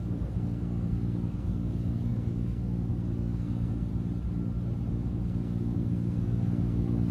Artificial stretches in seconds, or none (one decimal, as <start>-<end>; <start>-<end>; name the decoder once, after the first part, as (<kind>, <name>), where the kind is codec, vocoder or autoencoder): 0.0-3.9 (codec, SNAC); 4.9-7.1